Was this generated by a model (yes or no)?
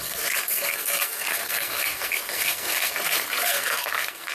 yes